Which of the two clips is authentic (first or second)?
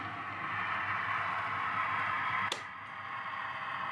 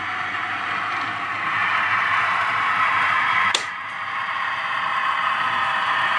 first